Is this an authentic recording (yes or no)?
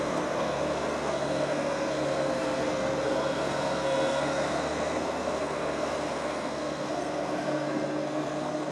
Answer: no